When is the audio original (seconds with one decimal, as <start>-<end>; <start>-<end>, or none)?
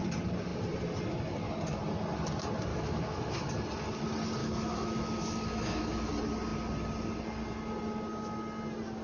0.0-2.7; 3.5-4.4; 6.1-9.0